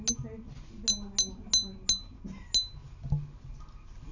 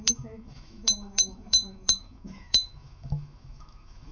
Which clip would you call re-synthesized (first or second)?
second